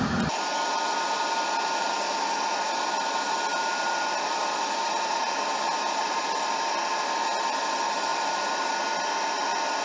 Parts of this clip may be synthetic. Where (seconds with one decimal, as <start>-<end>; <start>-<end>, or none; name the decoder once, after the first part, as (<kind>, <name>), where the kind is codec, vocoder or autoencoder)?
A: none